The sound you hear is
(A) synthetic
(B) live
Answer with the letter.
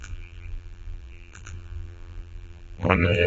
A